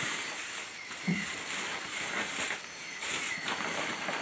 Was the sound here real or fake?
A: real